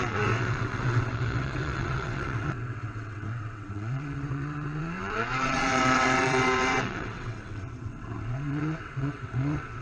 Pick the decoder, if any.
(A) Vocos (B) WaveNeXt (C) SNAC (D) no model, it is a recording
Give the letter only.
B